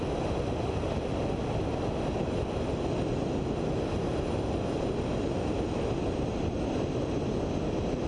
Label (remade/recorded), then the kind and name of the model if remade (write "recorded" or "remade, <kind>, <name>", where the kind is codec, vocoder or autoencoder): recorded